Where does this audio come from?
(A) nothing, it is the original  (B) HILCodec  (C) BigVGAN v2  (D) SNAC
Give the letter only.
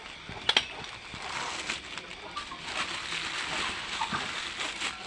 A